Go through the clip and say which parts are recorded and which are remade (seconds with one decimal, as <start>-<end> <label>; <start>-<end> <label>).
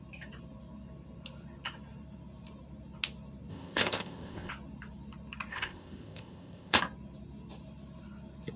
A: 0.0-3.5 recorded; 3.5-4.5 remade; 4.5-5.5 recorded; 5.5-6.8 remade; 6.8-8.6 recorded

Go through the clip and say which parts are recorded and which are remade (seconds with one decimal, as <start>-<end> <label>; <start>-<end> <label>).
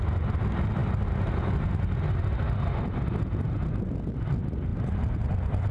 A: 0.0-5.7 recorded